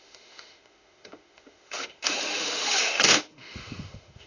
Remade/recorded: remade